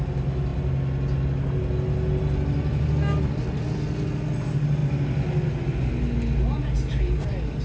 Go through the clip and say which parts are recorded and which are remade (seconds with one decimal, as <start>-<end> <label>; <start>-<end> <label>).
0.0-7.6 recorded